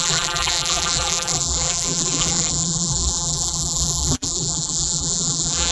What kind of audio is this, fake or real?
fake